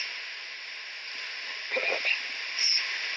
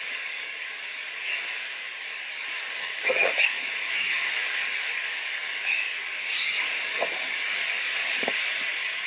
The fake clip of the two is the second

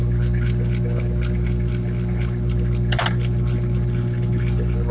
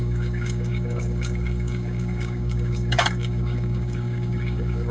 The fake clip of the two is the second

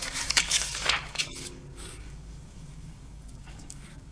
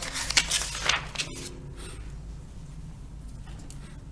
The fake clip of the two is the first